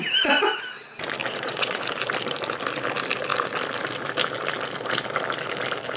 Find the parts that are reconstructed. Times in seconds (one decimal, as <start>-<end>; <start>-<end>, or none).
1.2-1.8